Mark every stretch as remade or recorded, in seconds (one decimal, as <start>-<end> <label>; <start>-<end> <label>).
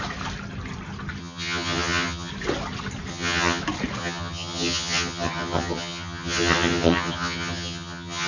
0.0-1.2 recorded; 1.2-2.3 remade; 2.3-3.1 recorded; 3.1-3.6 remade; 3.6-4.0 recorded; 4.0-8.3 remade